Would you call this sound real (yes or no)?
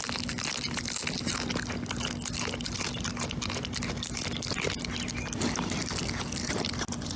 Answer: yes